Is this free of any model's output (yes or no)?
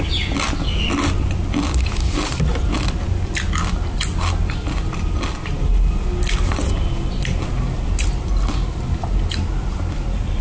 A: yes